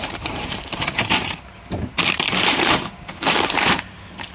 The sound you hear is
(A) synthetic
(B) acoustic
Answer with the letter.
A